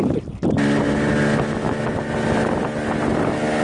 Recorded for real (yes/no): yes